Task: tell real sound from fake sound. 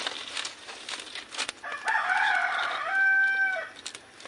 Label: real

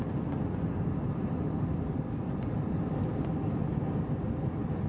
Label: real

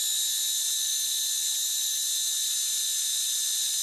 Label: real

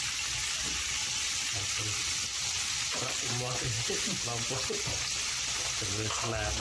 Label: real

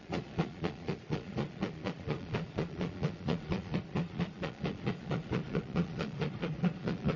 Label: fake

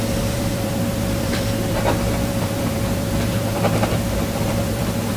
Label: fake